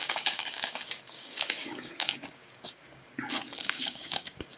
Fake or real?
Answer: fake